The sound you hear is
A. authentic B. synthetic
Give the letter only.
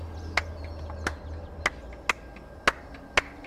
A